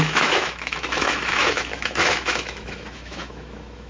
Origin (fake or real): fake